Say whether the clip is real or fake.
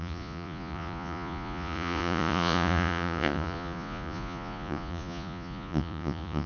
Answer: fake